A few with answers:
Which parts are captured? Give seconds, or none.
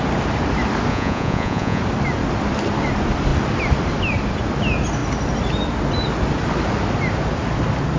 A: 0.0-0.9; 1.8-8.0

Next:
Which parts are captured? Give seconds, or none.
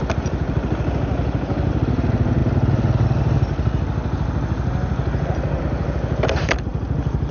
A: 0.0-7.3